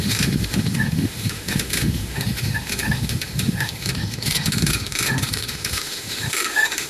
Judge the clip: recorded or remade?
remade